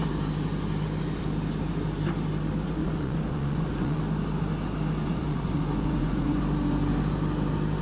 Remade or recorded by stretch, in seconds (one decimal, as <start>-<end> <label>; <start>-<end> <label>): 0.0-2.8 recorded; 2.8-4.0 remade; 4.0-5.0 recorded; 5.0-6.4 remade; 6.4-7.8 recorded